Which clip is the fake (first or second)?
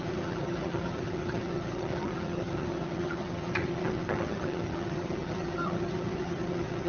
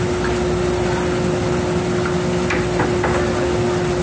first